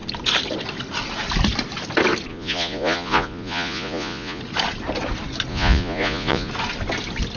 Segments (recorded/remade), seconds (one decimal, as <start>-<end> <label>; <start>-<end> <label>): 0.0-2.3 recorded; 2.3-4.4 remade; 4.4-5.5 recorded; 5.5-6.5 remade; 6.5-7.4 recorded